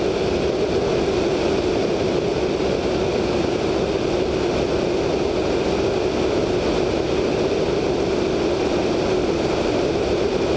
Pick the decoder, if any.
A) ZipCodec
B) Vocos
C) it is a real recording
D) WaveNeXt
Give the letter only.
C